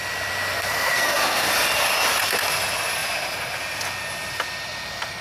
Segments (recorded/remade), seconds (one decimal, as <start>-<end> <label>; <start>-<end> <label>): 0.0-0.5 recorded; 0.5-1.5 remade; 1.5-5.2 recorded